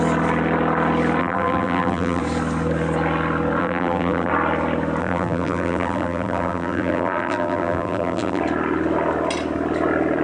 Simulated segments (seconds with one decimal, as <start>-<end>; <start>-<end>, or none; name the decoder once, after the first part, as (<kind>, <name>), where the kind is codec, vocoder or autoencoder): 1.2-2.2 (vocoder, BigVGAN v2); 3.6-4.3; 5.0-8.4